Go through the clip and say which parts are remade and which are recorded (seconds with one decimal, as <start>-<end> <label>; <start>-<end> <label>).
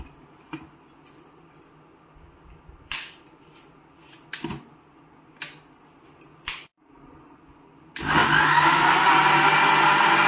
0.0-10.3 recorded